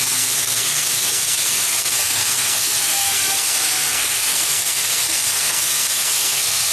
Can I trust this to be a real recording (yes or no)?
no